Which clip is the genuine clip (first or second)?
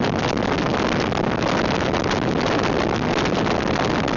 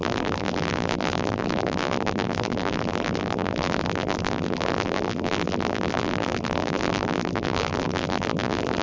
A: first